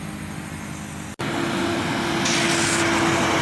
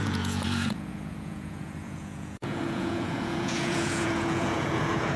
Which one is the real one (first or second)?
first